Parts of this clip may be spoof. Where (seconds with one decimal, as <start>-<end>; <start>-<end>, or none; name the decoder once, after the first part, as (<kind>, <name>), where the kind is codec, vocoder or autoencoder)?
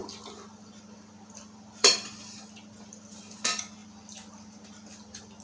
0.0-3.2 (vocoder, BigVGAN v2)